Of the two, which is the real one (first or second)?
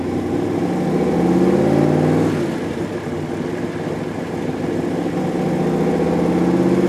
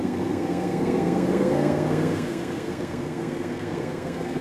first